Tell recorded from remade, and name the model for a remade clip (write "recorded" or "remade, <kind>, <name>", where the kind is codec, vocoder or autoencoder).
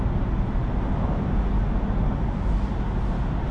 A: recorded